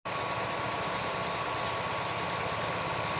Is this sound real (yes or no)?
yes